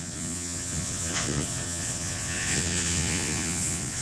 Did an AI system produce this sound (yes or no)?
yes